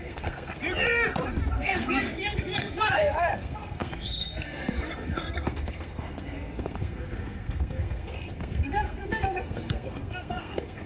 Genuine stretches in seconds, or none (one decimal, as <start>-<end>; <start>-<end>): 0.6-1.5